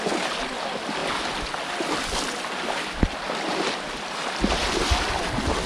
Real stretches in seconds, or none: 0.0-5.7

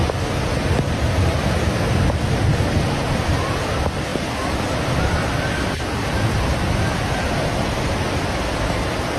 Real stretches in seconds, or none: 0.0-9.2